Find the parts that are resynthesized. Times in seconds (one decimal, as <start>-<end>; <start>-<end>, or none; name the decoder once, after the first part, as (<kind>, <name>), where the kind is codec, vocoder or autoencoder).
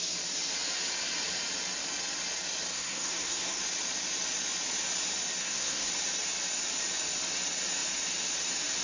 2.7-3.6 (codec, SNAC); 5.4-5.9